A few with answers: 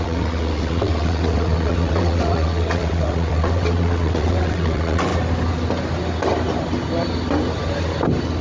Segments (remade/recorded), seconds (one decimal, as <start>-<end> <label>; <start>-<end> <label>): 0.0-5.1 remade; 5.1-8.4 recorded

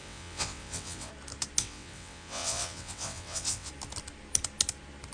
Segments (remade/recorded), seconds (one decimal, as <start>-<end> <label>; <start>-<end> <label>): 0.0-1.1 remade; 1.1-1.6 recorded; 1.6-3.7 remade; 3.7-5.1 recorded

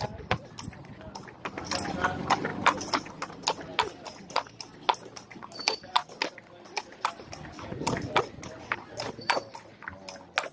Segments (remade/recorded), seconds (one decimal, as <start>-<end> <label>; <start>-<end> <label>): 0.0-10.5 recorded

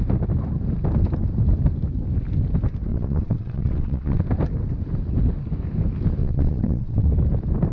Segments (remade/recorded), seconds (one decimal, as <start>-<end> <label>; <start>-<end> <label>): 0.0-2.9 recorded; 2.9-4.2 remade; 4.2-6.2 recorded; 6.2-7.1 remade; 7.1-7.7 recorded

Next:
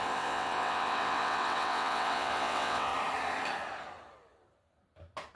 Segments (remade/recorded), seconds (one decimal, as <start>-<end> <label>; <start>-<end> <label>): 0.0-2.9 remade; 2.9-5.4 recorded

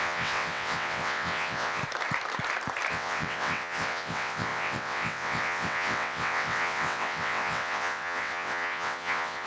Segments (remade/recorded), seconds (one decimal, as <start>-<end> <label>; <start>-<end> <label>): 0.0-1.8 remade; 1.8-2.9 recorded; 2.9-9.5 remade